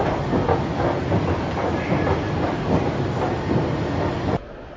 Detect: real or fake real